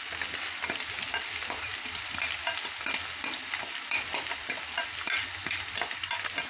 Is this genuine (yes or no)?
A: yes